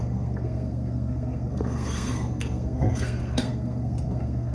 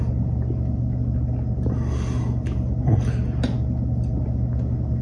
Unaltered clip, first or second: second